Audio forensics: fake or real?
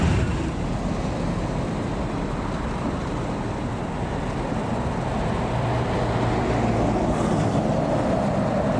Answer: real